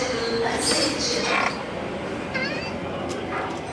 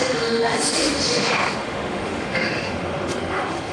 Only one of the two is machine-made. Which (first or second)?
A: second